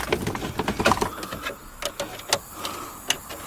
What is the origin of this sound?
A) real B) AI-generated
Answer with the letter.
A